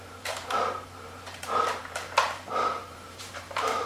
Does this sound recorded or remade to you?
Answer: remade